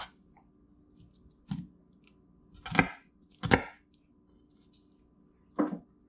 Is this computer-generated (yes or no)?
no